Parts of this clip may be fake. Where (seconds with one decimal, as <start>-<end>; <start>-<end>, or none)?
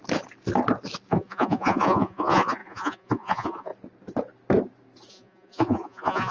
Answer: 1.1-3.7; 5.1-6.3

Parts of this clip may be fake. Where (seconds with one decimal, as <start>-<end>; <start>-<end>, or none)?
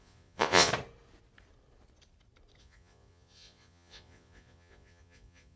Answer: 0.0-0.7; 2.6-5.6